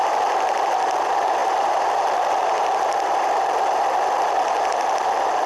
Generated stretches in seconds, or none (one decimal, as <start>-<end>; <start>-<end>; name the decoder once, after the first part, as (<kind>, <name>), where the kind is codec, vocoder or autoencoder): none